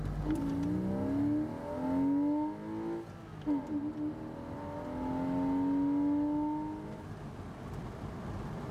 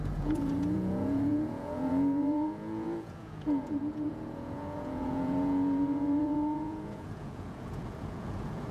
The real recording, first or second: first